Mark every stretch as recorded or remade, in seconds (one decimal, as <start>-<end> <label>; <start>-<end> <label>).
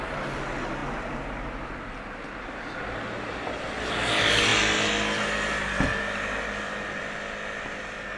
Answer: 0.0-8.2 recorded